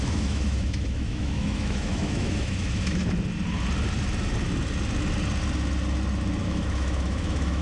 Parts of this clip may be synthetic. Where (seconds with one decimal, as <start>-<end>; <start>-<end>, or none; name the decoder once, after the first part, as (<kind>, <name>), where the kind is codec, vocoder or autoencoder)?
0.0-3.0 (autoencoder, DAC-VAE); 6.4-7.6